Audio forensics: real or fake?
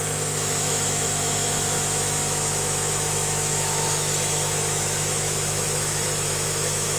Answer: fake